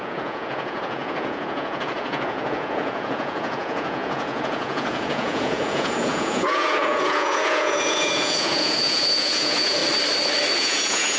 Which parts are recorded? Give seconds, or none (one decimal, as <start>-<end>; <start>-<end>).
9.8-10.6